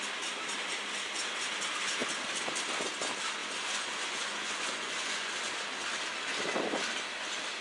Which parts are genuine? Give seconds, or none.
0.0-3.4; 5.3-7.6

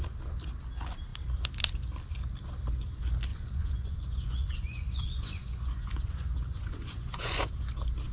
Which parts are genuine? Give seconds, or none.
0.0-3.3; 7.5-8.1

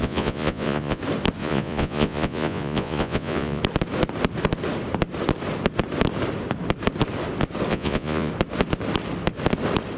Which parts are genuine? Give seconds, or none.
1.0-1.4; 3.6-7.7; 8.3-10.0

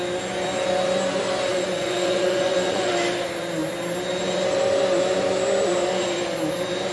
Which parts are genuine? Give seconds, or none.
0.0-1.5; 2.9-6.9

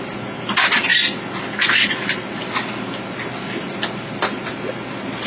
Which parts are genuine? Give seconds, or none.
0.0-5.3

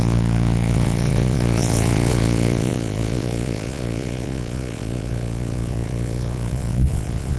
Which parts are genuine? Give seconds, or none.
none

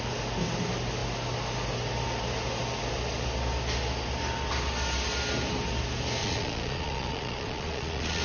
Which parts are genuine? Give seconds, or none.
0.0-6.2

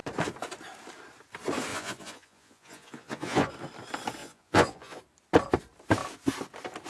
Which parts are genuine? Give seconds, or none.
0.0-1.7; 3.5-4.2; 5.0-6.9